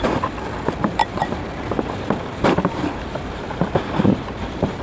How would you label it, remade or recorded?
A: remade